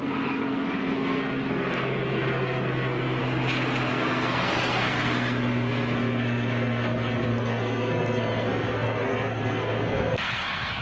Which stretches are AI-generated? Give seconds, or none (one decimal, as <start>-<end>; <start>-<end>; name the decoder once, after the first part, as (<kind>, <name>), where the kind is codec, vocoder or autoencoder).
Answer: 0.0-3.2 (codec, SNAC); 3.9-10.8